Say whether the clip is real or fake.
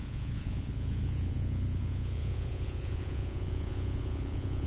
fake